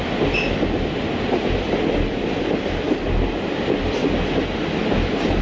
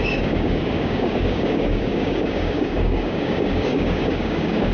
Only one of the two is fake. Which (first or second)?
second